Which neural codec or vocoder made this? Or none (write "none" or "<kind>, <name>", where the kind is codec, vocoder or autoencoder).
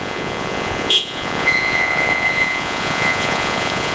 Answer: vocoder, Vocos